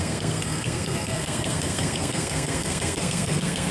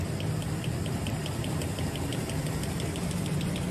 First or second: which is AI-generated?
first